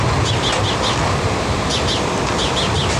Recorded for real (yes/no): no